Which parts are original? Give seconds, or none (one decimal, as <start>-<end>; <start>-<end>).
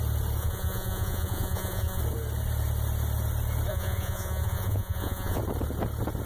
0.0-0.4; 2.0-3.7; 5.4-6.3